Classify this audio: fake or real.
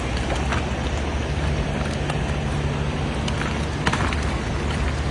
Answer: real